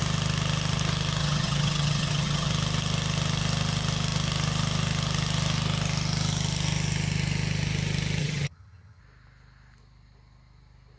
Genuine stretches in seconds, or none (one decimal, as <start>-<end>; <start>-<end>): 0.0-1.2; 2.5-8.2; 9.0-11.0